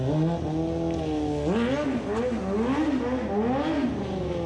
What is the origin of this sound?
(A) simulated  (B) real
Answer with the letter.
B